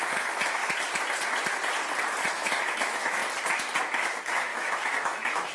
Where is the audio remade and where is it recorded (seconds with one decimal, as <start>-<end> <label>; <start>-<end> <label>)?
0.0-0.6 remade; 0.6-2.3 recorded; 2.3-3.2 remade; 3.2-3.8 recorded; 3.8-5.5 remade